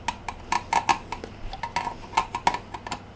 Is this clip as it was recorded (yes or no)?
yes